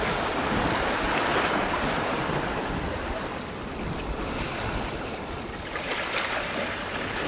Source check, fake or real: real